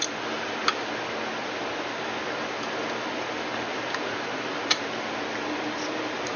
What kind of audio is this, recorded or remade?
recorded